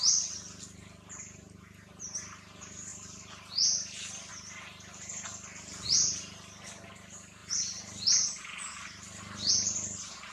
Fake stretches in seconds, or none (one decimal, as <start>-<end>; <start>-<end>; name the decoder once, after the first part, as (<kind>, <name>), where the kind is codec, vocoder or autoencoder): none